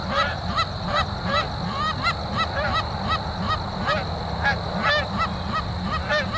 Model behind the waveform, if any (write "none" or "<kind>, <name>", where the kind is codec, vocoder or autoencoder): none